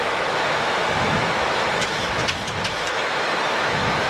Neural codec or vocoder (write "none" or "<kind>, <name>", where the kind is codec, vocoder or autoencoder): autoencoder, DAC-VAE